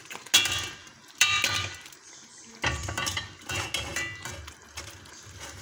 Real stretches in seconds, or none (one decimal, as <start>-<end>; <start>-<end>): 0.0-0.8; 1.4-2.8; 3.5-5.6